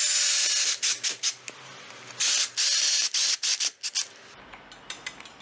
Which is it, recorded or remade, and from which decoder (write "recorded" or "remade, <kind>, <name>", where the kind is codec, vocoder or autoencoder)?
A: recorded